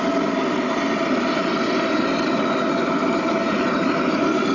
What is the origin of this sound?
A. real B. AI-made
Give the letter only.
A